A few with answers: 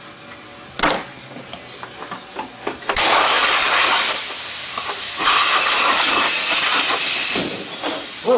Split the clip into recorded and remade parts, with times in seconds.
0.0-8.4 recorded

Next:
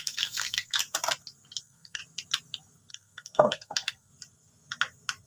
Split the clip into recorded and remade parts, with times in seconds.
0.0-0.8 remade; 0.8-1.6 recorded; 1.6-2.0 remade; 2.0-2.9 recorded; 2.9-4.1 remade; 4.1-5.3 recorded